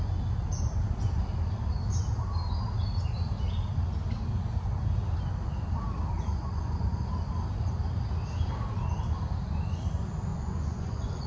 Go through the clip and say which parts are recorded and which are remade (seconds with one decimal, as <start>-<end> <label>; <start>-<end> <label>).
0.0-6.3 recorded; 6.3-7.1 remade; 7.1-10.3 recorded; 10.3-11.3 remade